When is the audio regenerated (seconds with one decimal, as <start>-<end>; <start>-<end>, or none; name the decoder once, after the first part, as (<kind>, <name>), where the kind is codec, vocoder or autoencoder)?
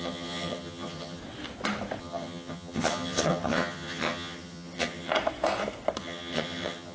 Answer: 0.0-1.2 (vocoder, HiFi-GAN); 2.0-5.1; 6.0-6.9